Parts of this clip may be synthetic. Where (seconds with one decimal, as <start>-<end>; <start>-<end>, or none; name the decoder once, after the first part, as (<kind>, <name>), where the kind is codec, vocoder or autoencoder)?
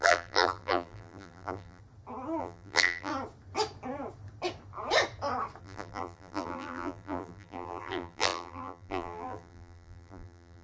0.0-1.8 (vocoder, BigVGAN v2); 2.4-3.1; 5.6-10.6